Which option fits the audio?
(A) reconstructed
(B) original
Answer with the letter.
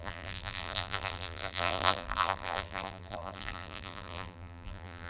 A